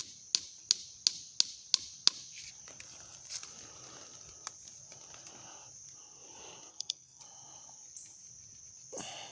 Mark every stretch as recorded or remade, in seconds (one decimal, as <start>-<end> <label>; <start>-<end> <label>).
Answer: 0.0-6.7 recorded; 6.7-7.2 remade; 7.2-9.3 recorded